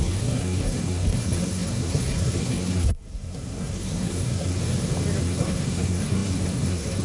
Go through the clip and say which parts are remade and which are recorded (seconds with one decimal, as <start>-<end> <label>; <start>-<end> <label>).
0.0-4.6 remade; 4.6-5.2 recorded; 5.2-7.0 remade